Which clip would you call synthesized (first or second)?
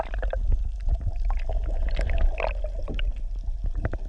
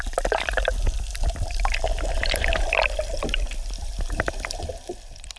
second